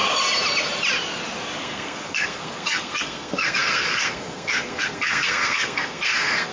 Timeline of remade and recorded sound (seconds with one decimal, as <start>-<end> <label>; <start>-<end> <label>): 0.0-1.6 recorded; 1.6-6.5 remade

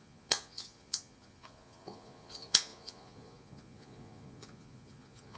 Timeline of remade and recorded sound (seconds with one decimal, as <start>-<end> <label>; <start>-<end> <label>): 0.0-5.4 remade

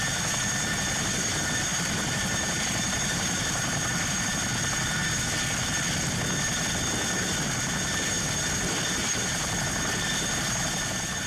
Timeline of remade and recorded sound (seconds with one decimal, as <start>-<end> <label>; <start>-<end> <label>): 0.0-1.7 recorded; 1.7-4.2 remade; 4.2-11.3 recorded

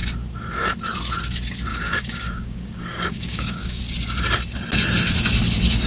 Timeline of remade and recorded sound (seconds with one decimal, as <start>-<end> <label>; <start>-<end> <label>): 0.0-1.7 recorded; 1.7-3.8 remade; 3.8-5.9 recorded

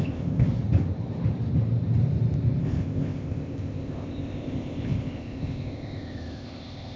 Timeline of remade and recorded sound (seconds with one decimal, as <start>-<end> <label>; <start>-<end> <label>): 0.0-0.5 remade; 0.5-2.6 recorded; 2.6-7.0 remade

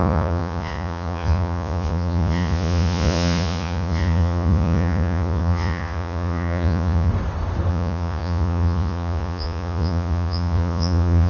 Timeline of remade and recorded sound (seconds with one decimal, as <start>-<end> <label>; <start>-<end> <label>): 0.0-7.1 remade; 7.1-7.7 recorded; 7.7-11.3 remade

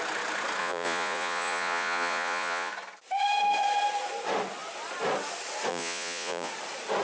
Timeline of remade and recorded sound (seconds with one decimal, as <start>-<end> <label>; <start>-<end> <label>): 0.0-0.6 recorded; 0.6-2.7 remade; 2.7-5.7 recorded; 5.7-6.5 remade; 6.5-7.0 recorded